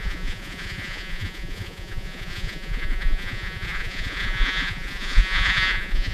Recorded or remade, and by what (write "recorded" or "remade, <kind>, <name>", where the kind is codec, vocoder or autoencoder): remade, vocoder, Vocos